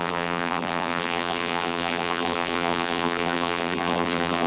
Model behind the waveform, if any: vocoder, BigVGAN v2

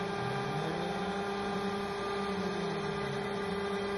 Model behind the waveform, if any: none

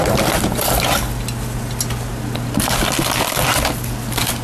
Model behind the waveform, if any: none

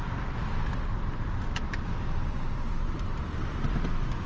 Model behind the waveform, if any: vocoder, BigVGAN v2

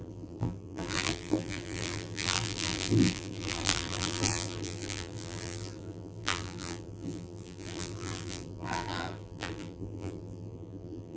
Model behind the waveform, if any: vocoder, BigVGAN v2